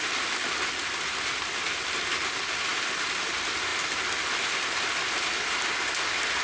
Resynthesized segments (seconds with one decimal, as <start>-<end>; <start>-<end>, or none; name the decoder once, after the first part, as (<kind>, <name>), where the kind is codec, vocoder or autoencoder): none